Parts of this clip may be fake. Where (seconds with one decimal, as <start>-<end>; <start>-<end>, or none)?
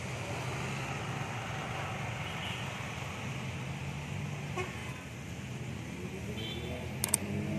none